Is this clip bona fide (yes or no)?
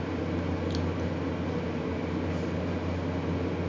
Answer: yes